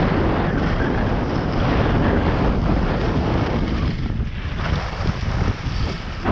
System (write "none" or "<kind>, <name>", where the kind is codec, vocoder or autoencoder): none